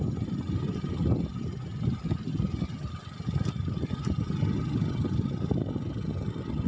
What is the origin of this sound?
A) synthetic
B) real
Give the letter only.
B